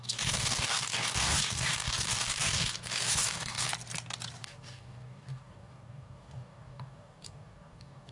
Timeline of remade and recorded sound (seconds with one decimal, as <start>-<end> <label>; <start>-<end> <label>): 0.0-3.7 remade; 3.7-4.4 recorded; 4.4-8.1 remade